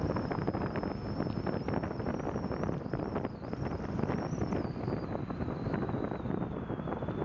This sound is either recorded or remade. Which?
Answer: recorded